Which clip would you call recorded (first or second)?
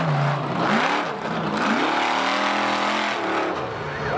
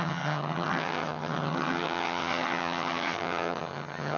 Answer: first